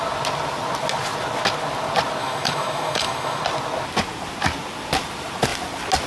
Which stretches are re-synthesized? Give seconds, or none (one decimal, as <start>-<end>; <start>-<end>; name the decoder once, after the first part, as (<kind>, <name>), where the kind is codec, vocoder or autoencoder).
2.2-3.4 (autoencoder, DAC-VAE)